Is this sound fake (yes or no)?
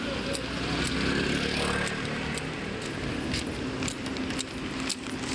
no